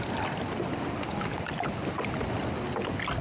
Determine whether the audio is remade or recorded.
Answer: recorded